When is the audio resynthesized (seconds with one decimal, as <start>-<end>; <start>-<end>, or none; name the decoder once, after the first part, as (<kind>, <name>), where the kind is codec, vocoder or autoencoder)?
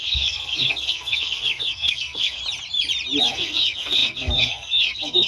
0.0-2.4 (codec, SNAC); 3.2-5.3